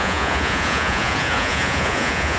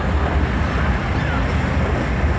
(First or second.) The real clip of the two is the second